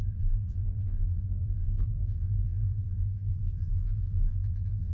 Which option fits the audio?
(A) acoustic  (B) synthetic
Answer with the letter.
B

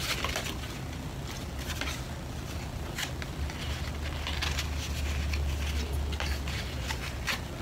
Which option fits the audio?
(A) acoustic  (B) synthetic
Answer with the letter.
A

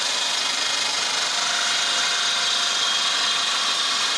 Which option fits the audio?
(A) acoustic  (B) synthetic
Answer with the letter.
A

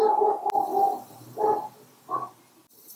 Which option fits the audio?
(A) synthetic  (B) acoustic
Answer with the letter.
B